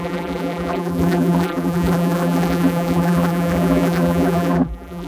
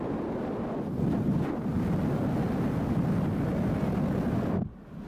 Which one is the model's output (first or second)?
first